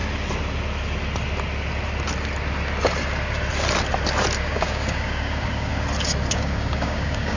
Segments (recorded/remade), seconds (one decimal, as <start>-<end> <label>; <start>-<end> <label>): 0.0-4.4 recorded; 4.4-5.7 remade; 5.7-6.3 recorded; 6.3-7.4 remade